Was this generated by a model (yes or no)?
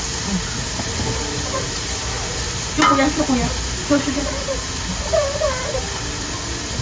no